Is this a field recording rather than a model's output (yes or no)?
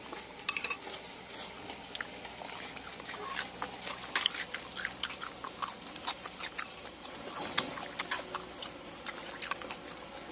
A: yes